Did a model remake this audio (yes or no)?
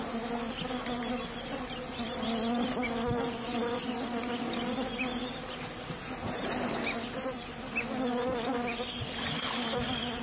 no